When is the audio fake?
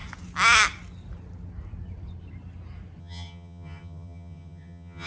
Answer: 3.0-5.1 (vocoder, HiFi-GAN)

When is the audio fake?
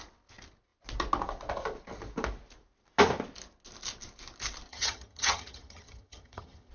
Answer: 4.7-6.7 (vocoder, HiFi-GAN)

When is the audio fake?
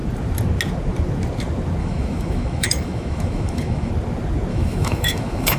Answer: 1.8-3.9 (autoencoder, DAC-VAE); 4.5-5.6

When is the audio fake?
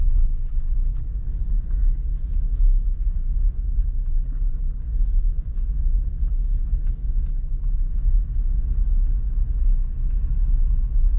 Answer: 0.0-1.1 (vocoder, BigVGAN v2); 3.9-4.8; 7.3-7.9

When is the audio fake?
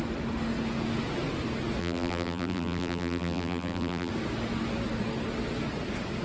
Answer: 1.8-4.1 (vocoder, BigVGAN v2)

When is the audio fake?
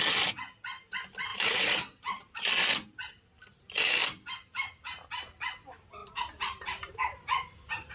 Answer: 1.3-2.5 (vocoder, BigVGAN v2); 6.0-7.9